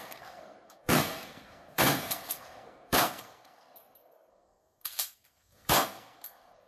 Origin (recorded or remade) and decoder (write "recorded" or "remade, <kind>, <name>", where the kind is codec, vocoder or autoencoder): remade, codec, SNAC